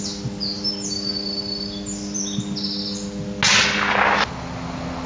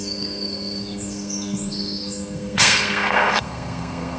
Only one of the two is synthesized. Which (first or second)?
second